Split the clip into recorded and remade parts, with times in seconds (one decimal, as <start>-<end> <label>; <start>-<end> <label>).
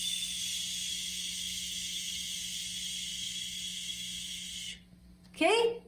0.0-0.9 recorded; 0.9-2.4 remade; 2.4-3.1 recorded; 3.1-4.5 remade; 4.5-5.9 recorded